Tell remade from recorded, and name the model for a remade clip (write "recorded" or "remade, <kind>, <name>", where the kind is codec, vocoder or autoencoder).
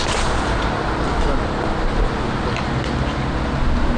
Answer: recorded